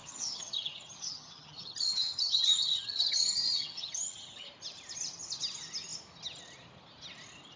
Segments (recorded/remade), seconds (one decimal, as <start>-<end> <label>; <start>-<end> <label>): 0.0-4.5 remade; 4.5-7.6 recorded